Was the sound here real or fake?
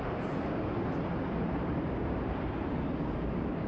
fake